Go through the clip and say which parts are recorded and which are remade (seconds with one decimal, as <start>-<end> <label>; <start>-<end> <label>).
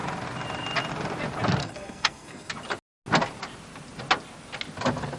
0.0-1.6 recorded; 1.6-2.5 remade; 2.5-5.2 recorded